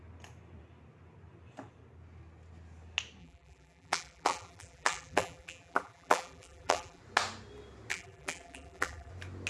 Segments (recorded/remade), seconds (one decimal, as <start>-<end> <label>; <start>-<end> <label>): 0.0-3.2 recorded; 3.2-7.0 remade; 7.0-7.9 recorded; 7.9-9.1 remade; 9.1-9.5 recorded